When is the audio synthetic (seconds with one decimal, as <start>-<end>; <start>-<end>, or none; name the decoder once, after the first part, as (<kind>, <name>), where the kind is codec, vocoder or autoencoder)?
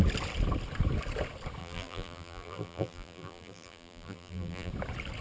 1.6-4.7 (vocoder, BigVGAN v2)